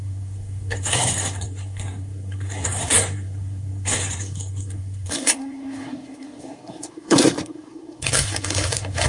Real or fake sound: fake